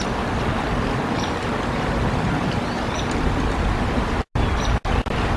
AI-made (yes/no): no